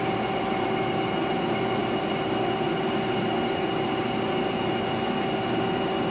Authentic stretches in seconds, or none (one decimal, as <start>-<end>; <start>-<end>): 0.0-6.1